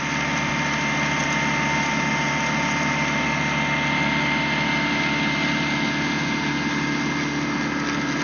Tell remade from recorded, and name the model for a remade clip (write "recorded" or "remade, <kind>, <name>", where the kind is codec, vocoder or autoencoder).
recorded